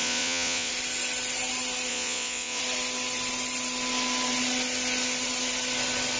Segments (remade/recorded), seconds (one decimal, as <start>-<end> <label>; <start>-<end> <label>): 0.0-0.7 remade; 0.7-1.9 recorded; 1.9-2.6 remade; 2.6-6.2 recorded